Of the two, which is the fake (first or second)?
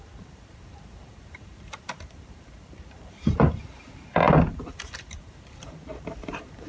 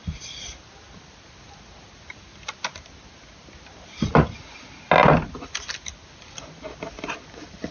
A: first